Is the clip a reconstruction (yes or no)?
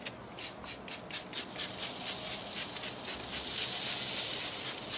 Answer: no